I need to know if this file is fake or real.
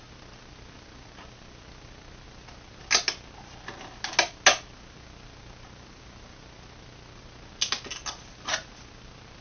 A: real